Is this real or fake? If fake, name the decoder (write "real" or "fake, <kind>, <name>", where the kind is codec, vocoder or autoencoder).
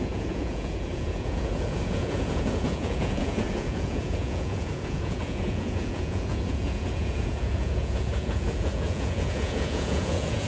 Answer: fake, vocoder, Vocos